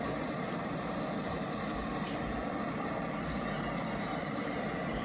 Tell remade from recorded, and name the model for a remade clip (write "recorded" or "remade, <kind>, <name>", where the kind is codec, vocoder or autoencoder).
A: remade, vocoder, BigVGAN v2